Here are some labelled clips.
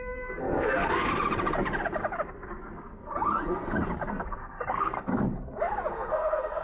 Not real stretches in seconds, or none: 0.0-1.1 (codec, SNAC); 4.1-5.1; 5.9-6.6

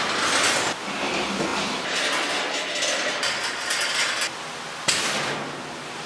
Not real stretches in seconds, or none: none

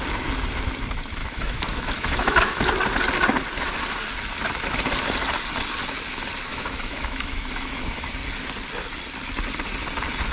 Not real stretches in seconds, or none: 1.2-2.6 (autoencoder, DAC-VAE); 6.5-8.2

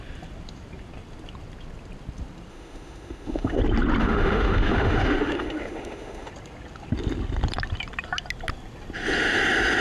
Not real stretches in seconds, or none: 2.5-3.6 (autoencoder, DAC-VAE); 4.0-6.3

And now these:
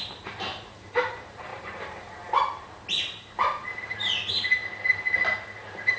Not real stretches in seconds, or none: 0.0-4.6 (vocoder, BigVGAN v2); 5.4-6.0

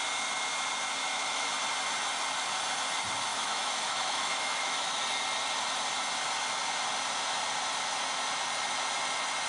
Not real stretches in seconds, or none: 1.0-1.5 (autoencoder, DAC-VAE); 3.3-4.9

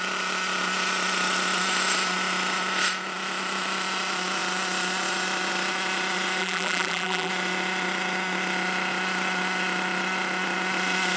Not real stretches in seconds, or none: 6.4-7.3 (vocoder, BigVGAN v2)

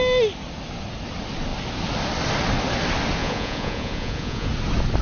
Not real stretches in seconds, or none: 3.2-4.5 (vocoder, Vocos)